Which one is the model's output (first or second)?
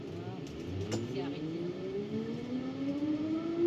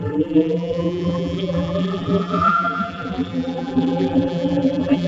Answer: second